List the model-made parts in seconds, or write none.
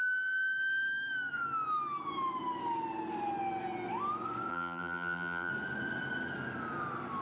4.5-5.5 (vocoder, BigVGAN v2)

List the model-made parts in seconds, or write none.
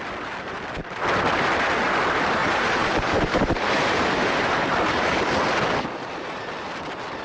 2.4-4.6 (vocoder, BigVGAN v2)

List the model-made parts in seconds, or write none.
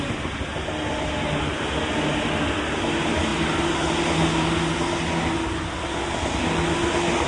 none